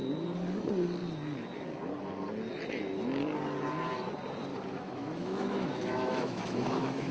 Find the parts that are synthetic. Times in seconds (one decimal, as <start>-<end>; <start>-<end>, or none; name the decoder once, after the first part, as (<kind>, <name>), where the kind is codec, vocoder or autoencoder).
4.5-7.1 (autoencoder, DAC-VAE)